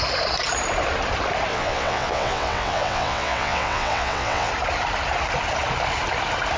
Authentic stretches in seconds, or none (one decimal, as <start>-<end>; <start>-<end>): 0.0-1.5; 4.5-6.6